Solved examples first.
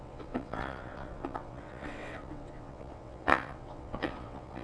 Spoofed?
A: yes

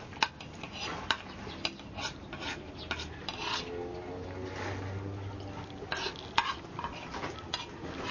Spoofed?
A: no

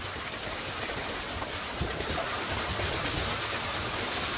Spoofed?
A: no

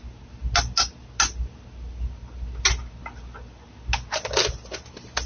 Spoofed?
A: no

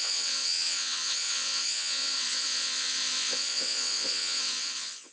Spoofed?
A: yes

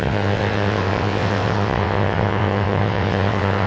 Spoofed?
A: yes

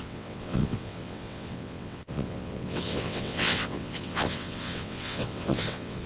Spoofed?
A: yes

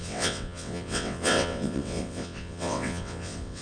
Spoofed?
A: yes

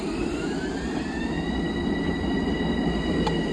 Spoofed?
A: no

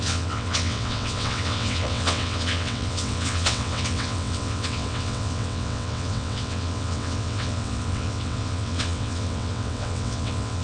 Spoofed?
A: yes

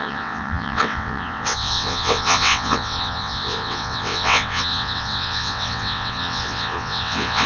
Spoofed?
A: yes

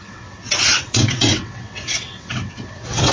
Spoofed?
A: yes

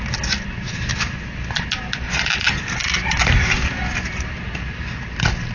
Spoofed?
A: no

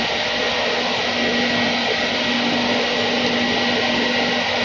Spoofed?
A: no